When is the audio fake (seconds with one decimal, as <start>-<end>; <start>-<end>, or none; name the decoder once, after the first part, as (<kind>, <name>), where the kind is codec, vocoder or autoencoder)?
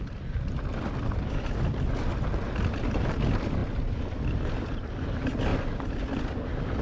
none